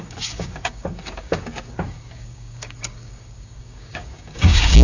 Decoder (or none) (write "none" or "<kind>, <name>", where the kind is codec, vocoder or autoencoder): codec, DAC